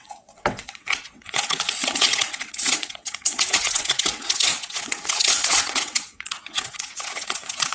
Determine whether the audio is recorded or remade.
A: remade